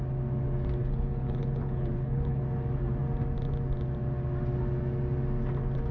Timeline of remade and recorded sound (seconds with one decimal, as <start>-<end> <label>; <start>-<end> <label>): 0.0-0.8 recorded; 0.8-2.4 remade; 2.4-5.9 recorded